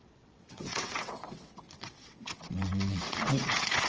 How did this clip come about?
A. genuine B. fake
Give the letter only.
B